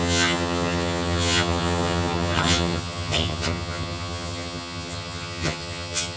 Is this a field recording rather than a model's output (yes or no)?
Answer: no